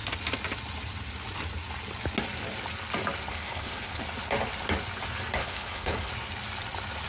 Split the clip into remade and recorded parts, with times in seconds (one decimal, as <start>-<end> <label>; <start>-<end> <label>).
0.0-3.3 recorded; 3.3-4.0 remade; 4.0-5.4 recorded; 5.4-6.1 remade; 6.1-7.1 recorded